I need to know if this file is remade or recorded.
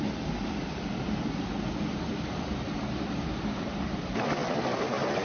recorded